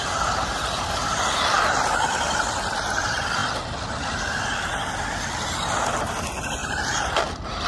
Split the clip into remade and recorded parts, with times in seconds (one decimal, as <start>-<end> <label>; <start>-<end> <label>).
0.0-1.2 remade; 1.2-6.6 recorded; 6.6-7.3 remade; 7.3-7.7 recorded